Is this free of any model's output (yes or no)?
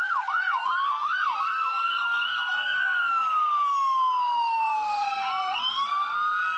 no